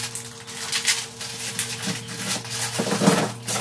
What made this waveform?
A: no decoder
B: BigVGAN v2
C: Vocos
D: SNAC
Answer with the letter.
A